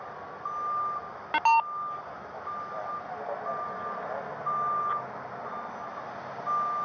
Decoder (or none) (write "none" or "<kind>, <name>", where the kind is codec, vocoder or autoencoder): none